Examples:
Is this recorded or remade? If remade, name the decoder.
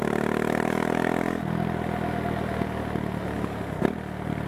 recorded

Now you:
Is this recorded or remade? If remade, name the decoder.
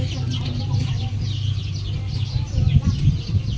recorded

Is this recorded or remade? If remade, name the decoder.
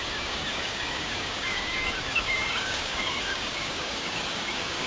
remade, codec, DAC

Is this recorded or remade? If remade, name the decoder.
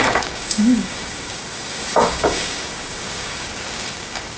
remade, codec, DAC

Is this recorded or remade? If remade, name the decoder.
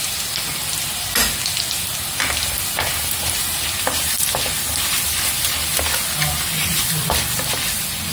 recorded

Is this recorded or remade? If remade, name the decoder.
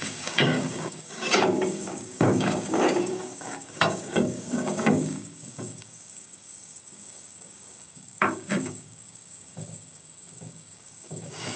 remade, codec, DAC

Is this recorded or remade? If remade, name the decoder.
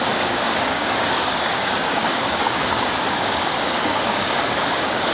remade, codec, DAC